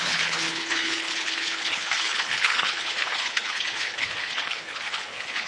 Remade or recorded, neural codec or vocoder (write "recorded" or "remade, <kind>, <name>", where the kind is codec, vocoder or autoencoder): remade, codec, HILCodec